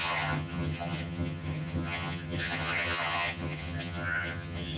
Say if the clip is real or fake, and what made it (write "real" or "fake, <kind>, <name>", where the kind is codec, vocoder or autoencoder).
fake, vocoder, HiFi-GAN